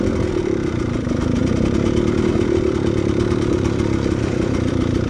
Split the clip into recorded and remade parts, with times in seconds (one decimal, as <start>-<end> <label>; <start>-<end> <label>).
0.0-5.1 remade

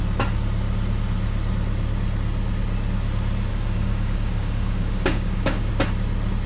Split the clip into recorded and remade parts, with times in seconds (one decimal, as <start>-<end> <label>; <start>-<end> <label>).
0.0-3.5 recorded; 3.5-5.7 remade; 5.7-6.5 recorded

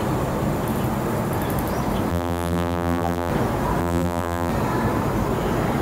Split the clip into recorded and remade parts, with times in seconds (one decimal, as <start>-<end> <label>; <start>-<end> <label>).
0.0-2.1 recorded; 2.1-3.3 remade; 3.3-3.8 recorded; 3.8-4.5 remade; 4.5-5.8 recorded

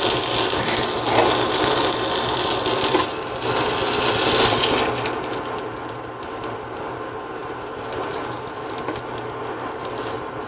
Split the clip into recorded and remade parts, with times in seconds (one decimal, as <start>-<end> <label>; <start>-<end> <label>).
0.0-7.4 recorded; 7.4-8.5 remade; 8.5-10.5 recorded

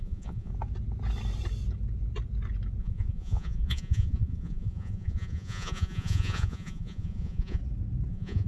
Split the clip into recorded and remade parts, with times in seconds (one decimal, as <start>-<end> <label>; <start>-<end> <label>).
0.0-0.5 remade; 0.5-2.8 recorded; 2.8-7.6 remade; 7.6-8.1 recorded; 8.1-8.5 remade

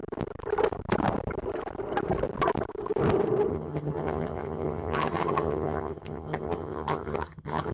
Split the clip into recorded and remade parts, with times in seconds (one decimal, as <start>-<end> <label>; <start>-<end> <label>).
0.0-3.5 recorded; 3.5-7.7 remade

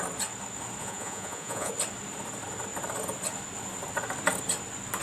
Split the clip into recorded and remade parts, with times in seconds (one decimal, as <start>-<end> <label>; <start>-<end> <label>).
0.0-0.8 recorded; 0.8-1.7 remade; 1.7-5.0 recorded